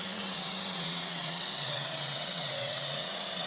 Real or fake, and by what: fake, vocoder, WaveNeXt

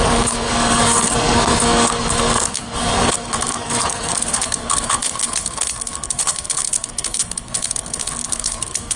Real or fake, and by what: fake, codec, SNAC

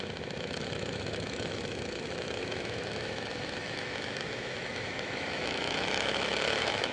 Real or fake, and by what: fake, autoencoder, DAC-VAE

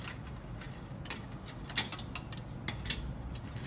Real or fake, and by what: real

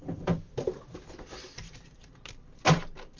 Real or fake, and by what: real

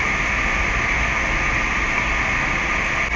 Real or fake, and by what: real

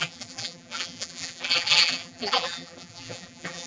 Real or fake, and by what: fake, vocoder, BigVGAN v2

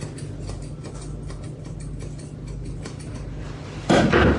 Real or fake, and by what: real